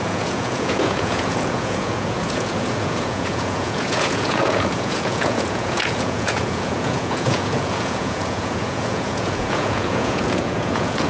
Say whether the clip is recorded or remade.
remade